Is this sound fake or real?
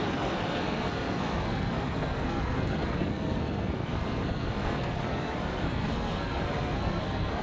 fake